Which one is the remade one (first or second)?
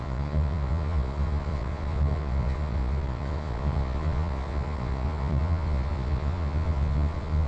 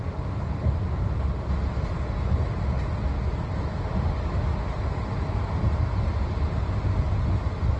first